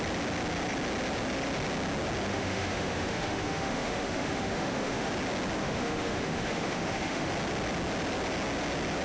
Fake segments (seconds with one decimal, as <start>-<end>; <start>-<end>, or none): 2.3-5.1; 5.6-7.3